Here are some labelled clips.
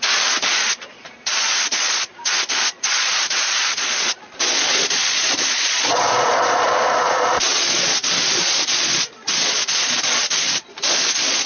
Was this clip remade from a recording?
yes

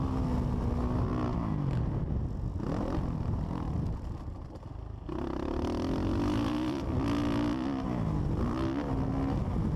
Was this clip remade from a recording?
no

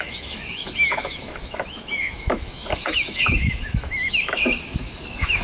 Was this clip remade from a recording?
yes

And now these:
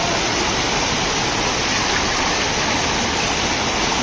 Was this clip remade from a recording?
no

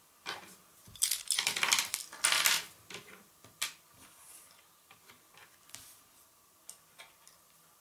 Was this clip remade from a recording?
no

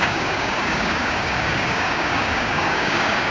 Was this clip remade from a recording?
yes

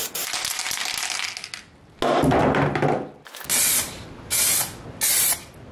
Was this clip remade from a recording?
no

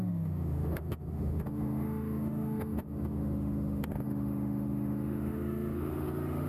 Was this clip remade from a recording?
yes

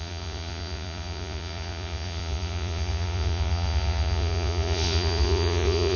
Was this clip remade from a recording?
yes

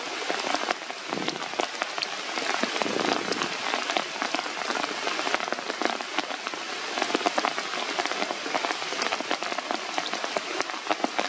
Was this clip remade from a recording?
no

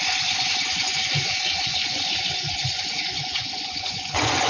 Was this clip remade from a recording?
yes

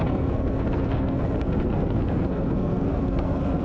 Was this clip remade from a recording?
yes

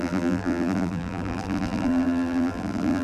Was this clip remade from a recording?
yes